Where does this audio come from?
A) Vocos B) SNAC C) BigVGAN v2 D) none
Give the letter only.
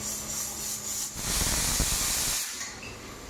D